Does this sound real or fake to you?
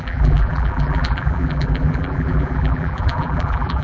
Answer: fake